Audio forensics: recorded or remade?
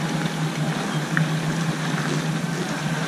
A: recorded